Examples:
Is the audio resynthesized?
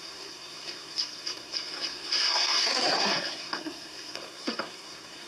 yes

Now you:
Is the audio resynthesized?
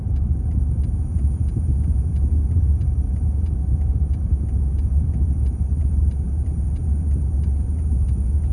yes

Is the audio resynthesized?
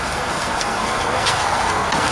yes